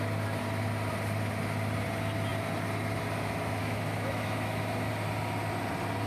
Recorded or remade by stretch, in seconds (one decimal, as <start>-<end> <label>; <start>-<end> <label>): 0.0-3.6 recorded; 3.6-4.9 remade; 4.9-6.1 recorded